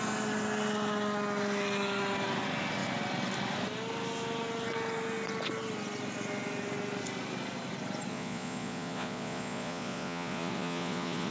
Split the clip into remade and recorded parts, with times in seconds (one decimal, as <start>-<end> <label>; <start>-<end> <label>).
0.0-8.1 recorded; 8.1-11.3 remade